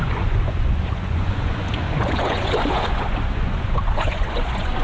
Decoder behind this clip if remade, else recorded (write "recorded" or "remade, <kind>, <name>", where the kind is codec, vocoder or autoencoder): remade, vocoder, Vocos